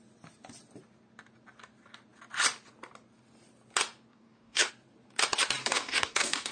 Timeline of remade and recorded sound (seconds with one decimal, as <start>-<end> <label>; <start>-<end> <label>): 0.0-4.1 recorded; 4.1-4.7 remade; 4.7-5.6 recorded; 5.6-6.5 remade